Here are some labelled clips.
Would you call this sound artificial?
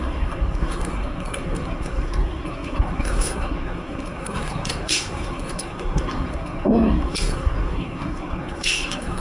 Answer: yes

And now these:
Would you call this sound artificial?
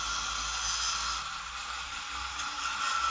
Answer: no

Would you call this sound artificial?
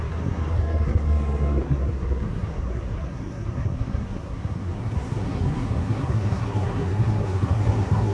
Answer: yes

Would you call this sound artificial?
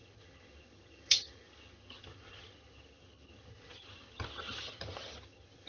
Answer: yes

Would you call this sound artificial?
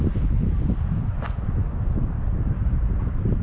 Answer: no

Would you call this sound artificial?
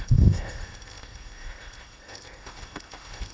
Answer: yes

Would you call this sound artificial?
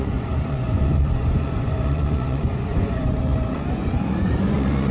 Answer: yes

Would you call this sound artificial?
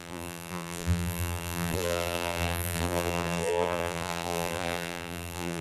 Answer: yes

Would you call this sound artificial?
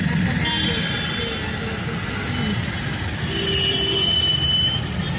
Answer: no